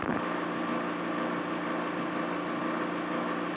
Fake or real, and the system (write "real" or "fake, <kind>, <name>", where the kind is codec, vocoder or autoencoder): real